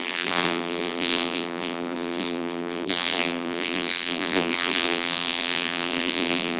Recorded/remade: remade